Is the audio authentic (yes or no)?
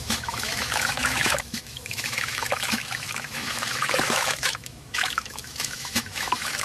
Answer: no